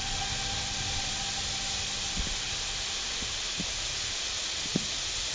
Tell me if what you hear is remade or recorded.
recorded